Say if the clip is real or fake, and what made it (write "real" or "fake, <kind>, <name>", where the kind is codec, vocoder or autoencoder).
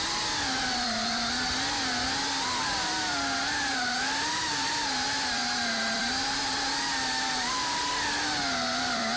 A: fake, vocoder, BigVGAN v2